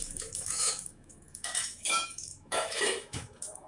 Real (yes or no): no